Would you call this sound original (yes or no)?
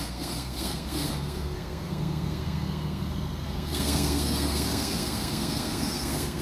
no